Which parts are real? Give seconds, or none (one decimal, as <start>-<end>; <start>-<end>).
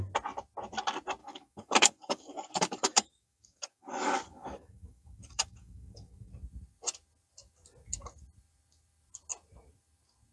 0.0-1.2; 6.3-10.3